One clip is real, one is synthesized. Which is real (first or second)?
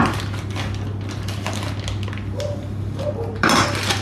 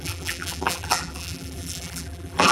first